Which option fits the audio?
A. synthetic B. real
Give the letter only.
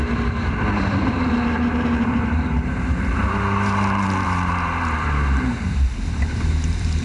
A